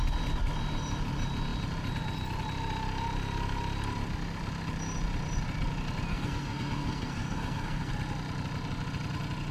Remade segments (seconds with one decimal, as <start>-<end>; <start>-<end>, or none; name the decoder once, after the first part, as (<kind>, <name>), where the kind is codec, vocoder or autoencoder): 6.1-7.9 (codec, SNAC)